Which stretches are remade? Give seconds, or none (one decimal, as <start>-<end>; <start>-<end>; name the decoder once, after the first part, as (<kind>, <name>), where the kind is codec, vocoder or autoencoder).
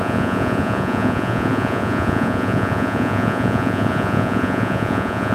0.0-5.3 (vocoder, Vocos)